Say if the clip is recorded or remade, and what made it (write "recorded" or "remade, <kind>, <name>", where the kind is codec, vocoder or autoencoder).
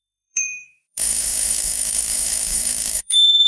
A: remade, autoencoder, DAC-VAE